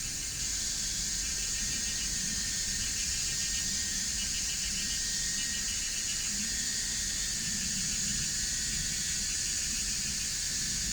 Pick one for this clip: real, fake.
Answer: real